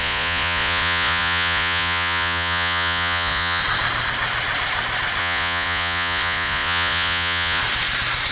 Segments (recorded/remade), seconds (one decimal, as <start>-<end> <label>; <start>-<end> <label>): 0.0-3.6 remade; 3.6-5.2 recorded; 5.2-7.6 remade; 7.6-8.3 recorded